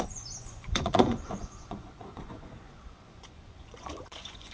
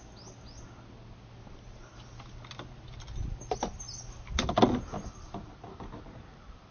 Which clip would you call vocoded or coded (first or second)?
first